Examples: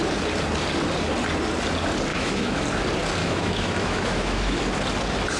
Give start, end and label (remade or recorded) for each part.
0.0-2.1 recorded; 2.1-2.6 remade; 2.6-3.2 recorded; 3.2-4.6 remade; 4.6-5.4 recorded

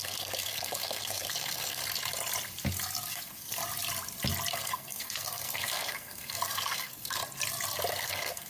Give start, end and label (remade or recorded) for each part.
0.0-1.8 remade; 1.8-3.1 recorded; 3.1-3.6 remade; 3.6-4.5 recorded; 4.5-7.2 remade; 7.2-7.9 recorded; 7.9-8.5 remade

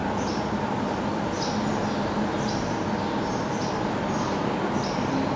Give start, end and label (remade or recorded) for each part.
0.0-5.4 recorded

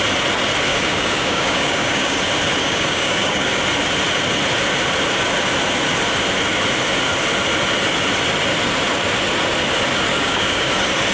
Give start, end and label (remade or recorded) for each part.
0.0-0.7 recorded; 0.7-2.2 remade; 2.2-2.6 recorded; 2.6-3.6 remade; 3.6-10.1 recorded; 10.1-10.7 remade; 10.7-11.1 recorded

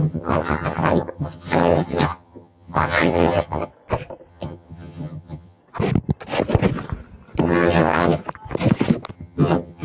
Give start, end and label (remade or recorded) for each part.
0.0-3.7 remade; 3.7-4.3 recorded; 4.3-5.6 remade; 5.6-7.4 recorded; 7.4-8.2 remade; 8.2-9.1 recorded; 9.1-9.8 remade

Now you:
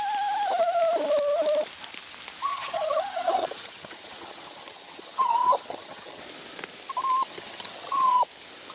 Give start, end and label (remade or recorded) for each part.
0.0-2.5 recorded; 2.5-6.2 remade; 6.2-7.3 recorded; 7.3-8.2 remade; 8.2-8.7 recorded

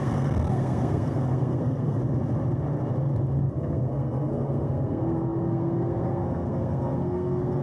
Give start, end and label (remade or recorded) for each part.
0.0-2.0 remade; 2.0-3.4 recorded; 3.4-7.6 remade